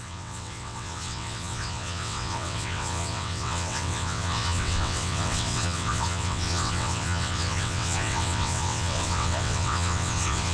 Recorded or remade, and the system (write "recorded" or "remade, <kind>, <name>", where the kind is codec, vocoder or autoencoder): remade, vocoder, WaveNeXt